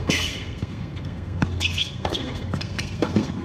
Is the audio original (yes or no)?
no